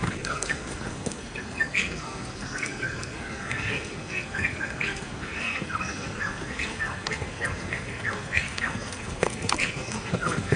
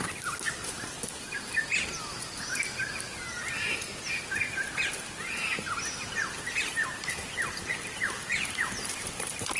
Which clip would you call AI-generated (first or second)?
first